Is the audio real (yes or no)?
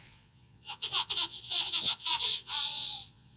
no